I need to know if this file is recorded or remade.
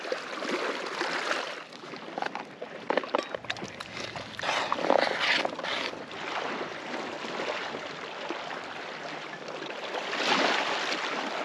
recorded